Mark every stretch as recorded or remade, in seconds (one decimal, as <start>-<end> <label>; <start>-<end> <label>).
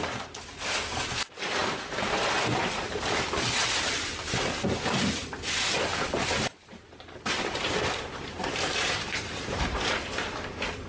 0.0-1.6 recorded; 1.6-3.3 remade; 3.3-5.9 recorded; 5.9-10.0 remade; 10.0-10.9 recorded